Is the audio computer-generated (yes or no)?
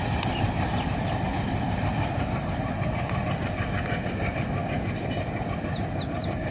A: no